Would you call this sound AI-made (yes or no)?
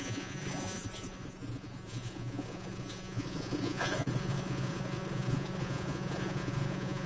yes